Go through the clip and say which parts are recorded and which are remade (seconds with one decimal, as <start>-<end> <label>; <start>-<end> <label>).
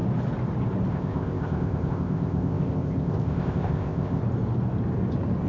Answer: 0.0-0.9 recorded; 0.9-4.2 remade; 4.2-5.5 recorded